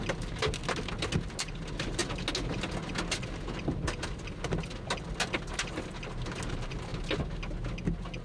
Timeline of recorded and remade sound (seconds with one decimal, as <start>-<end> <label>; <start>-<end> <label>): 0.0-8.2 recorded

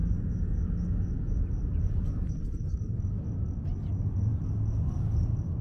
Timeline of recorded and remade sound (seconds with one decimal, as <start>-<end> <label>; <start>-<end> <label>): 0.0-5.6 recorded